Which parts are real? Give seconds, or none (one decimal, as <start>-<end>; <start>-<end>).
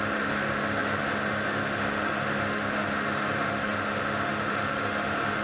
none